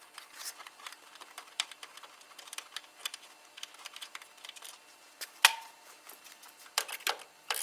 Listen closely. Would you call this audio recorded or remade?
remade